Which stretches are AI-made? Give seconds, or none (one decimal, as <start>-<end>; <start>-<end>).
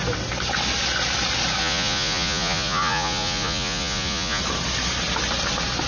1.6-4.4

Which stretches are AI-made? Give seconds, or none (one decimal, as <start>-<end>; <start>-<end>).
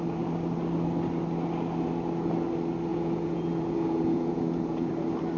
2.9-4.9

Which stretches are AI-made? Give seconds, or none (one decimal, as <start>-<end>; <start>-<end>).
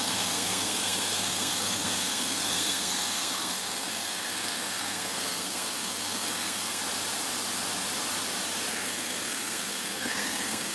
0.0-6.8; 8.7-10.7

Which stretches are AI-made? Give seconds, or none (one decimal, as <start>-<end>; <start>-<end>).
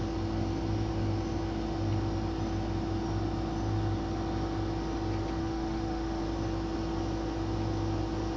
5.4-6.2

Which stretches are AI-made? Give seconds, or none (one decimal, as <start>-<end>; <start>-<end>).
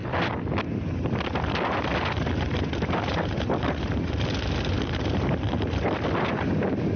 none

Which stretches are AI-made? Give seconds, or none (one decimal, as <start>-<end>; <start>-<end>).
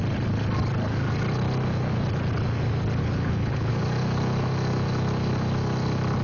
3.0-3.7